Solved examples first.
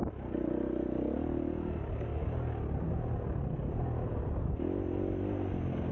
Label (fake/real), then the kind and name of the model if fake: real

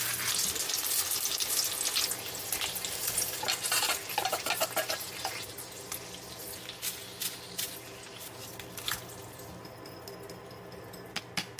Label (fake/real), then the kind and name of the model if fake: real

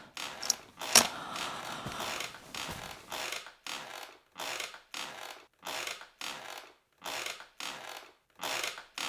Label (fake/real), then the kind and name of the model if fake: real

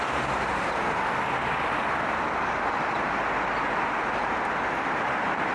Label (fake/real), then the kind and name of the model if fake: real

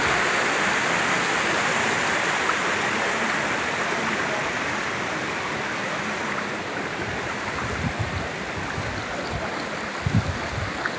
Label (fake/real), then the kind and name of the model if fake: real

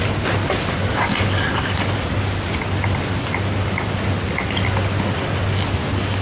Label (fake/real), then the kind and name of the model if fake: real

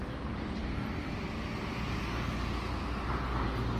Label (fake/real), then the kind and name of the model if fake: real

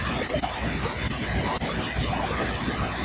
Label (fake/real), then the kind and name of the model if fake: real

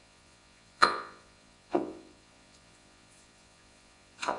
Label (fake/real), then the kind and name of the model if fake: fake, vocoder, Vocos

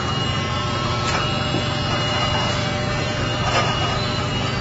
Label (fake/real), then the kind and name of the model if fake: fake, vocoder, BigVGAN v2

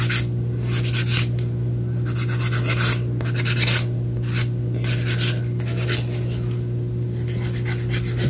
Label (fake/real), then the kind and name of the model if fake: real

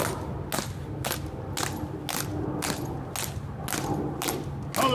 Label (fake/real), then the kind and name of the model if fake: real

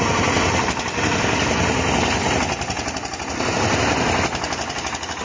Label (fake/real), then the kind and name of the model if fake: real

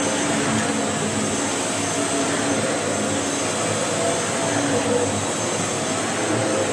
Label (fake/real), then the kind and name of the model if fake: real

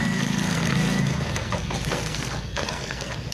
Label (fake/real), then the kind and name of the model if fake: fake, codec, SNAC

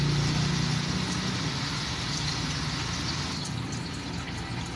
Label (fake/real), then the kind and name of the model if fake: real